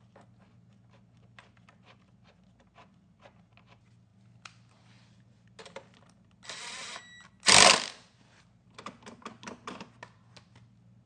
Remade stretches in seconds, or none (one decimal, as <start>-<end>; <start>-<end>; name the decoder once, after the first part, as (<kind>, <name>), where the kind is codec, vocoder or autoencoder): none